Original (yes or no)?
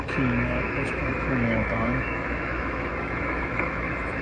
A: no